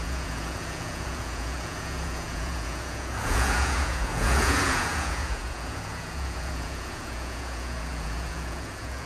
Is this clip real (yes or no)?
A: no